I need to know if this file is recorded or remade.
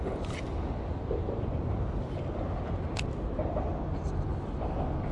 recorded